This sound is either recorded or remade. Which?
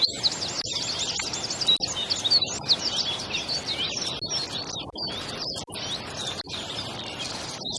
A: recorded